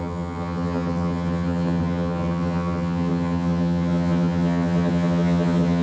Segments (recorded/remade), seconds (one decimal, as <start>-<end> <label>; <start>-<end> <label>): 0.0-5.8 remade